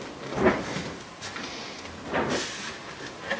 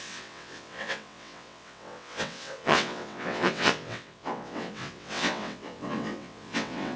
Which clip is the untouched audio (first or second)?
first